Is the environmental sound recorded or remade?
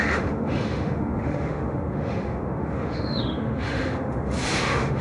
remade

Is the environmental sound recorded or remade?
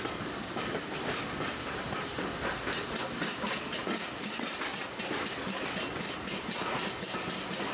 recorded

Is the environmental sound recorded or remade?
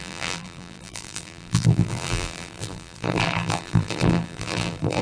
remade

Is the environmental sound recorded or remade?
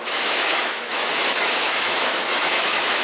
remade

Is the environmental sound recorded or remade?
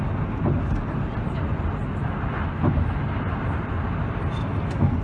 recorded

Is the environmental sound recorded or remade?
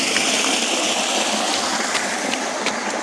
recorded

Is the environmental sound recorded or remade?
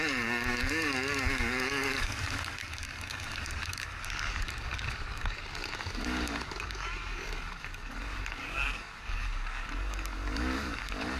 remade